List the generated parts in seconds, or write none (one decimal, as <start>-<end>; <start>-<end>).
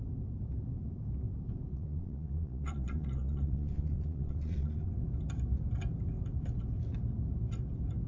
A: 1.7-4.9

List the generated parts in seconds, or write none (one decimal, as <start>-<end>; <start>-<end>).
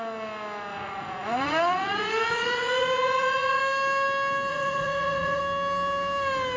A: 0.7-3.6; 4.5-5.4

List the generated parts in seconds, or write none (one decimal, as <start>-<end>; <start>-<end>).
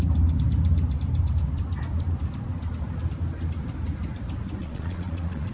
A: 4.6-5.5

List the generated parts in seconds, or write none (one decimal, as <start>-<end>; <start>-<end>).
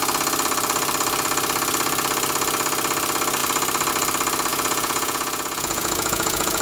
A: 4.5-6.6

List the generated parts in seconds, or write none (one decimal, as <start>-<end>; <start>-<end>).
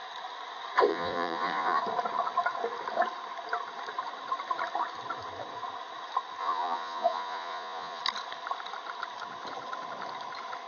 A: 0.9-1.8; 6.4-8.0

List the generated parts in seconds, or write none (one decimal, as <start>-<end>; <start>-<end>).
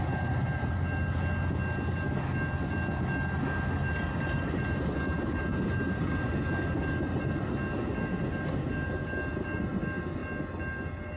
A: none